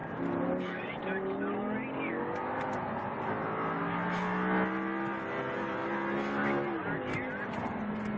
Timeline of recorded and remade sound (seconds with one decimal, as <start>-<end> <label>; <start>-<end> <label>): 0.0-8.2 recorded

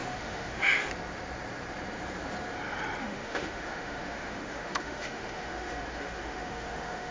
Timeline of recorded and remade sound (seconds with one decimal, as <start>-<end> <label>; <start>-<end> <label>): 0.0-0.9 remade; 0.9-3.0 recorded; 3.0-7.1 remade